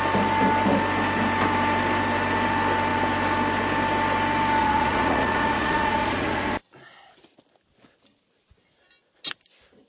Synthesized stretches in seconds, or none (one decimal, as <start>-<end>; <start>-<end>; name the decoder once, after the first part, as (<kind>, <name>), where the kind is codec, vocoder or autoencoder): 4.6-6.5 (vocoder, Vocos)